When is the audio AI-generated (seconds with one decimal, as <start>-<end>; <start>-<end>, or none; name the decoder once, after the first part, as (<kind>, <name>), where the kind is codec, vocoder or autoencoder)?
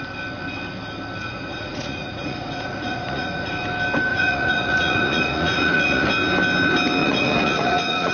1.2-3.5 (vocoder, Vocos); 4.1-6.1; 7.0-8.1